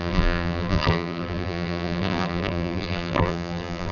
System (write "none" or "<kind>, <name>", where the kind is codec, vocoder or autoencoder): vocoder, BigVGAN v2